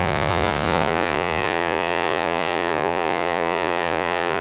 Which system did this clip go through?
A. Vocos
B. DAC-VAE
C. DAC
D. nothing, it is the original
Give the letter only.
A